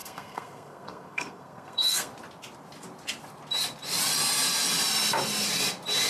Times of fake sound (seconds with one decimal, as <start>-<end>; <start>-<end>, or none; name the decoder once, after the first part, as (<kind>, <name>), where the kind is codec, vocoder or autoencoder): 0.0-2.1 (codec, SNAC)